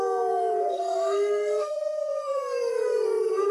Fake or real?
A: fake